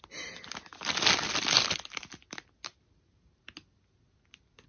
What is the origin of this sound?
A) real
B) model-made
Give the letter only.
A